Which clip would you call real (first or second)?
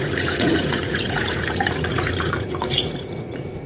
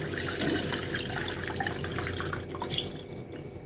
second